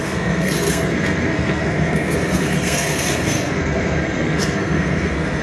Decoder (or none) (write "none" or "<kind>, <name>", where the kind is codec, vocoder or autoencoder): codec, SNAC